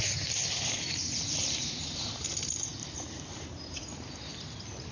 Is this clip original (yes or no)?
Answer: no